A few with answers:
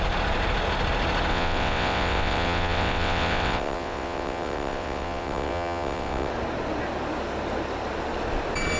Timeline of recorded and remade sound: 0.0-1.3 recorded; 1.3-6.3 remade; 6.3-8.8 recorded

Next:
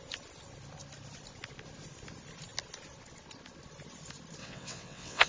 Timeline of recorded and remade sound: 0.0-4.4 recorded; 4.4-5.3 remade

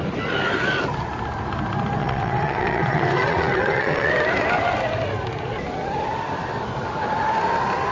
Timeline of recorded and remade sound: 0.0-2.0 recorded; 2.0-4.1 remade; 4.1-7.9 recorded

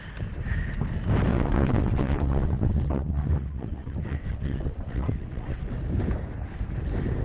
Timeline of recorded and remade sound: 0.0-1.3 recorded; 1.3-5.6 remade; 5.6-7.2 recorded

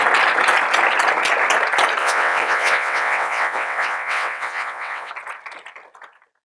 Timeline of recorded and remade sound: 0.0-2.0 recorded; 2.0-5.1 remade; 5.1-6.6 recorded

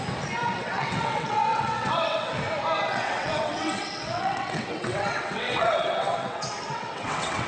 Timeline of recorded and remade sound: 0.0-0.4 recorded; 0.4-2.3 remade; 2.3-2.9 recorded; 2.9-7.5 remade